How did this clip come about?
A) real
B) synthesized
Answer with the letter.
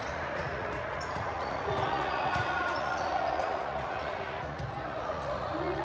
B